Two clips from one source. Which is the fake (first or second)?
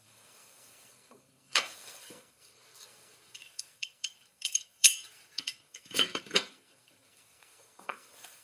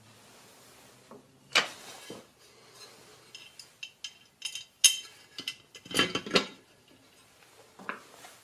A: first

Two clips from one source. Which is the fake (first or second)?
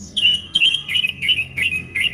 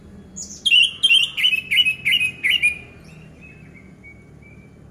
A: first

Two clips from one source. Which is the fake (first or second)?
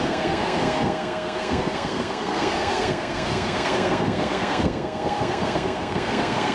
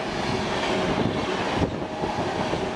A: first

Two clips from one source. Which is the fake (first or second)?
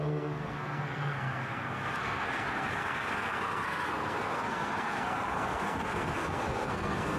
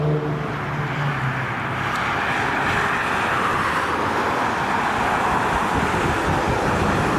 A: first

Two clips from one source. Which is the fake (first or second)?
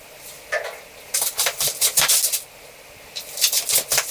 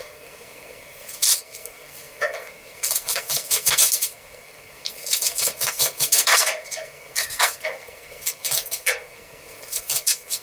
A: second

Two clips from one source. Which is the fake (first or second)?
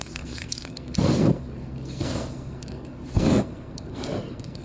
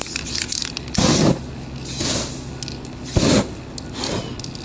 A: first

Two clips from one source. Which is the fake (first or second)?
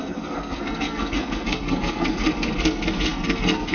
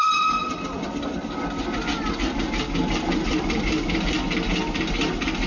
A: first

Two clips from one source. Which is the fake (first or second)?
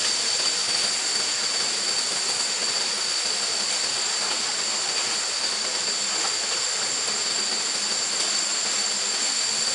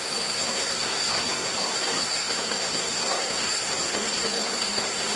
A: second